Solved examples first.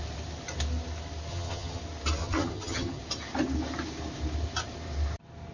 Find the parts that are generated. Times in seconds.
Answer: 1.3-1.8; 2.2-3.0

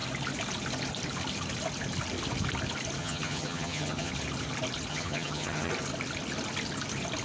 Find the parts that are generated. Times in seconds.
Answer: 3.0-4.1; 4.9-5.7

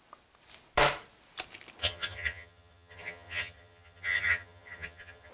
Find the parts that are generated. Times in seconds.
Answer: 1.8-5.3

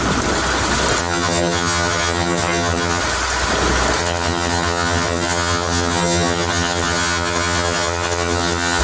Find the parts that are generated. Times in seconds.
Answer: 1.0-3.0; 4.0-8.8